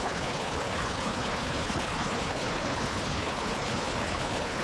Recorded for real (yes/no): no